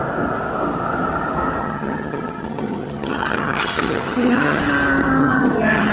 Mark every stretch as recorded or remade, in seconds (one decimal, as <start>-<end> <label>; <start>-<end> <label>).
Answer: 0.0-1.6 recorded; 1.6-4.6 remade; 4.6-5.2 recorded; 5.2-5.9 remade